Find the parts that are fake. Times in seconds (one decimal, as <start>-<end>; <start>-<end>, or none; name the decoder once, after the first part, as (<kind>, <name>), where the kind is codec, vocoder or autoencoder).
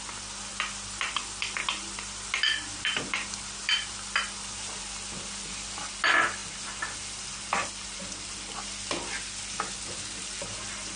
2.7-4.8 (vocoder, BigVGAN v2); 6.4-9.2